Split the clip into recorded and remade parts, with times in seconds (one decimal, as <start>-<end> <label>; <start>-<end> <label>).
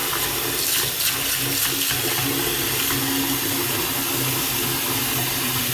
0.0-5.7 recorded